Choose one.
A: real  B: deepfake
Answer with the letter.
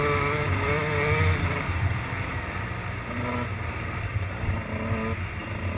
A